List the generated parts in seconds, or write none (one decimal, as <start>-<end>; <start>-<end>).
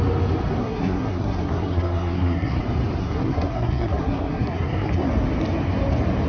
0.6-2.6; 3.0-5.1